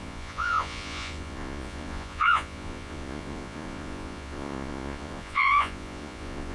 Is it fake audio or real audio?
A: fake